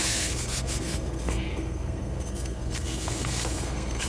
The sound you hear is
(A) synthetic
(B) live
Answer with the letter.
A